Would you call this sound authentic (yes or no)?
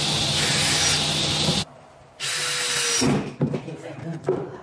yes